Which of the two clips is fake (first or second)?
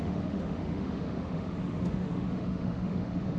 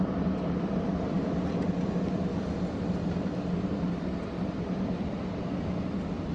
first